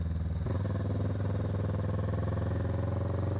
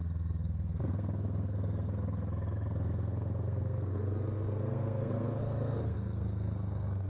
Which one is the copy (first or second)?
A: second